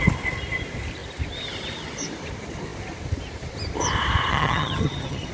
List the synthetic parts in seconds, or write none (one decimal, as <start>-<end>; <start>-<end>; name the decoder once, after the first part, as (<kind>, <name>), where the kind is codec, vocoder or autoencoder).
4.3-5.3 (vocoder, HiFi-GAN)